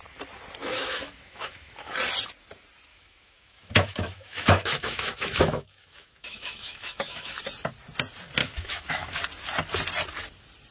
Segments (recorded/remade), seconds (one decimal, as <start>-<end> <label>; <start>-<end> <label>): 0.0-0.6 recorded; 0.6-1.9 remade; 1.9-2.9 recorded; 2.9-7.4 remade; 7.4-8.4 recorded; 8.4-9.2 remade; 9.2-10.7 recorded